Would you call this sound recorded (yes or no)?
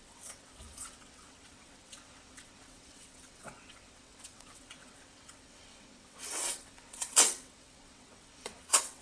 no